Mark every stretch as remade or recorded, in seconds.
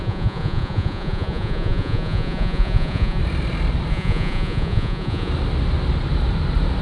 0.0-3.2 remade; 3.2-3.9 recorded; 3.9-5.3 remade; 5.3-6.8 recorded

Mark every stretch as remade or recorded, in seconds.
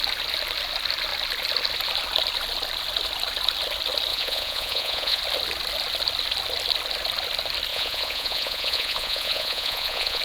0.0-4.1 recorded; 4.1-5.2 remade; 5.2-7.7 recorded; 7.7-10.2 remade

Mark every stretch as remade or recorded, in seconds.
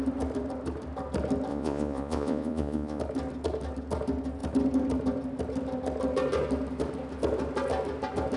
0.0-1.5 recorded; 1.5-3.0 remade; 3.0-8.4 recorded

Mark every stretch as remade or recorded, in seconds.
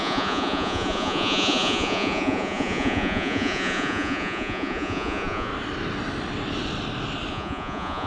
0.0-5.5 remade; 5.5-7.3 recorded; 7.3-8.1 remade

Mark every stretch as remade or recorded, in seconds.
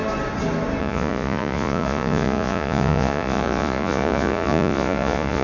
0.0-0.8 recorded; 0.8-5.4 remade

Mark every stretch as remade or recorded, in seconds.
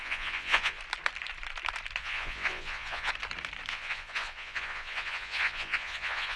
0.0-0.8 remade; 0.8-2.0 recorded; 2.0-3.1 remade; 3.1-3.7 recorded; 3.7-6.4 remade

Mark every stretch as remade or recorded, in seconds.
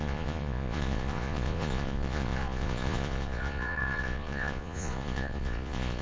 0.0-6.0 remade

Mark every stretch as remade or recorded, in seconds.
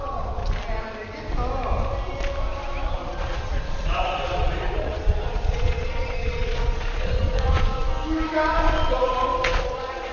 0.0-0.4 remade; 0.4-2.9 recorded; 2.9-7.8 remade; 7.8-8.9 recorded; 8.9-10.1 remade